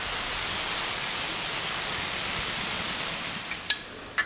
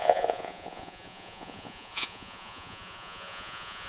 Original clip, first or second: first